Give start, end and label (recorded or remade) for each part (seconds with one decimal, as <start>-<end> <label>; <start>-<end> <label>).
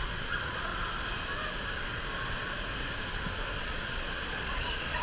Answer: 0.0-0.7 remade; 0.7-3.6 recorded; 3.6-5.0 remade